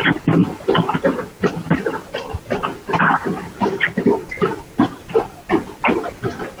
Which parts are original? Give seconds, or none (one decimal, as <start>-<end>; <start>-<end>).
0.0-6.6